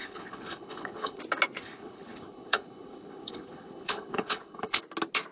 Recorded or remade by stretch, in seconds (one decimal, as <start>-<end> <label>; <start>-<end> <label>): 0.0-1.2 remade; 1.2-1.6 recorded; 1.6-4.8 remade; 4.8-5.3 recorded